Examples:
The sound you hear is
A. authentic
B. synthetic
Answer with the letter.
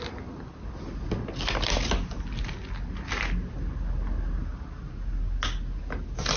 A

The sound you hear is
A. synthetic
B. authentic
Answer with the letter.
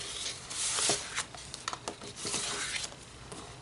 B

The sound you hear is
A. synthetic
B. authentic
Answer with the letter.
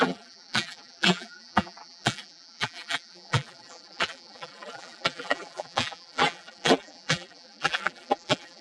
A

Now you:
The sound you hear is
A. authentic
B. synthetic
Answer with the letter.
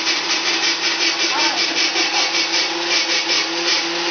A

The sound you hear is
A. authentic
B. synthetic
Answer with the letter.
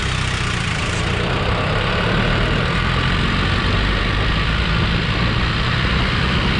B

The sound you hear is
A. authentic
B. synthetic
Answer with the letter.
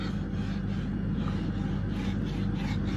A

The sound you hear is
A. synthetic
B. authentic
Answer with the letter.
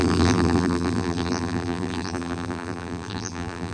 A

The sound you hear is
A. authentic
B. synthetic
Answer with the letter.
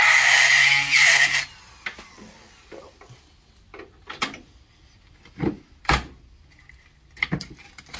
A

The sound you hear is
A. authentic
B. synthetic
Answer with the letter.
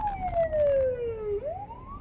A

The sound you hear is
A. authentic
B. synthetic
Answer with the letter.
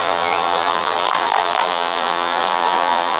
B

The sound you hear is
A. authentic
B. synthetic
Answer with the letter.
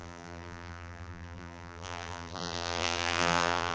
B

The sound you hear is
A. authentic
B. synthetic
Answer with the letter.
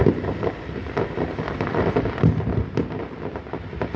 A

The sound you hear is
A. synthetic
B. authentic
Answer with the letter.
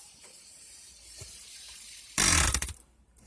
A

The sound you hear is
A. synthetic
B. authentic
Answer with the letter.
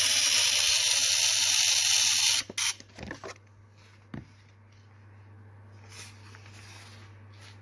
B